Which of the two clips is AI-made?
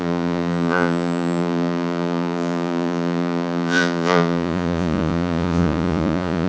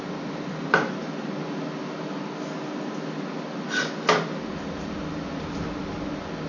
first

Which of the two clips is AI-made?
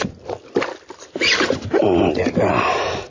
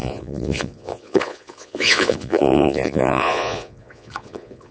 second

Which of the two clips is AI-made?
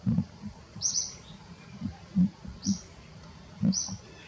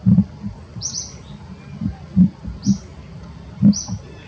first